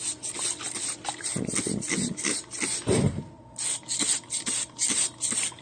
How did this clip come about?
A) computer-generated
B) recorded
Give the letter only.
B